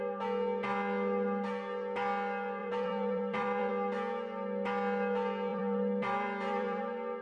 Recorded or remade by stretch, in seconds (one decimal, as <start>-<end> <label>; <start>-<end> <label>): 0.0-2.6 recorded; 2.6-3.7 remade; 3.7-5.5 recorded; 5.5-6.8 remade; 6.8-7.2 recorded